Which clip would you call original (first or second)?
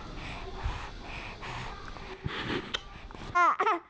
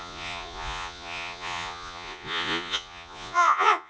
first